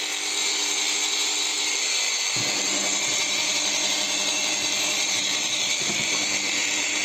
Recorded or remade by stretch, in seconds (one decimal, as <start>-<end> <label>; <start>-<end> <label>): 0.0-0.4 recorded; 0.4-1.0 remade; 1.0-1.5 recorded; 1.5-2.1 remade; 2.1-2.7 recorded; 2.7-7.0 remade